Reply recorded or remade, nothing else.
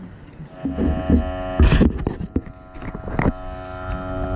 recorded